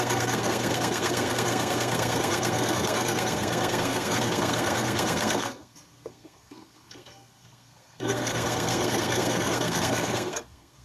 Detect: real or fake fake